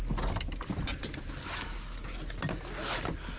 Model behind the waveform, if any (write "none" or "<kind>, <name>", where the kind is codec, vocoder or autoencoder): none